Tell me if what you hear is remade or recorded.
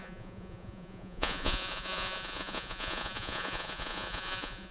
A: remade